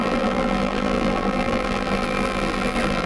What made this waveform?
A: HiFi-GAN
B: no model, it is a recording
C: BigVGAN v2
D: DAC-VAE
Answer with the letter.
C